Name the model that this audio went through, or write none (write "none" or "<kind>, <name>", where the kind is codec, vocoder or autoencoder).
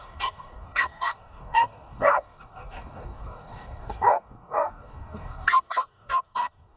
codec, DAC